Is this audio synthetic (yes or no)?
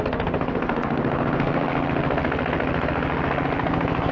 no